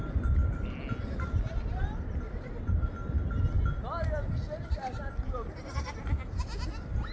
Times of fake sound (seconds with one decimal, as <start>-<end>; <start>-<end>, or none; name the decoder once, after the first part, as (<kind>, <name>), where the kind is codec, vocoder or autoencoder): none